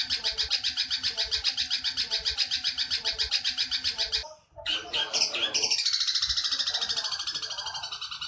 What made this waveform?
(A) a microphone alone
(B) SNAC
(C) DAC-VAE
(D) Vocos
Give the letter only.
A